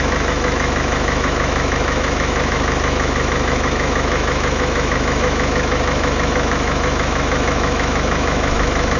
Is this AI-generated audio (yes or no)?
yes